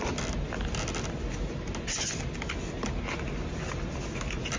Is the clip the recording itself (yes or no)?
yes